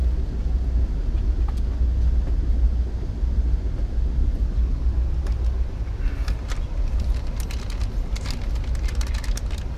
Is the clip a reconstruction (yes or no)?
no